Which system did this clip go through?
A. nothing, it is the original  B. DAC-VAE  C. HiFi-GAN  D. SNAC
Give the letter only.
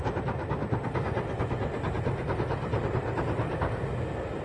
A